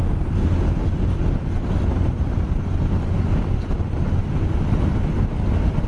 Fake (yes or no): no